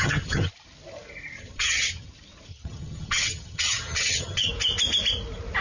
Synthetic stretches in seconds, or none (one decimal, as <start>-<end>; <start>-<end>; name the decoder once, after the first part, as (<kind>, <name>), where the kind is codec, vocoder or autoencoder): 0.0-0.5 (vocoder, HiFi-GAN); 1.4-2.1; 2.5-4.5